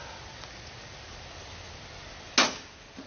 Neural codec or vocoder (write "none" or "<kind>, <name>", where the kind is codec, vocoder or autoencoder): none